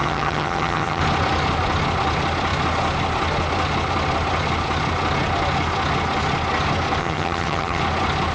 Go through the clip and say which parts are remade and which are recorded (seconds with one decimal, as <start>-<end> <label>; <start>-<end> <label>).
0.0-1.0 remade; 1.0-7.0 recorded; 7.0-7.8 remade; 7.8-8.3 recorded